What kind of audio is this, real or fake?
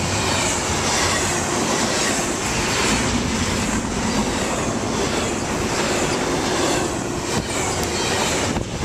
real